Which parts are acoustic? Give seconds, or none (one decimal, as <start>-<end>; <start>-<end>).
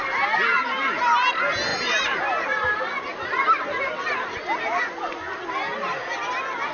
0.0-1.7; 4.8-6.7